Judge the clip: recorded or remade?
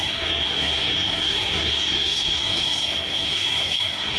remade